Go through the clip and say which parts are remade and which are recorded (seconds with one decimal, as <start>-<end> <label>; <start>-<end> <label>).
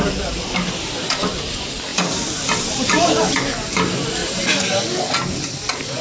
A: 0.0-6.0 recorded